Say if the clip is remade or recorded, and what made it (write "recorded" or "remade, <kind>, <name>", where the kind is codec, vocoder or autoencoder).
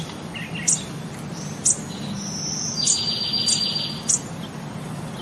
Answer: recorded